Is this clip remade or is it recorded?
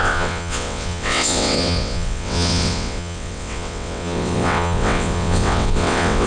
remade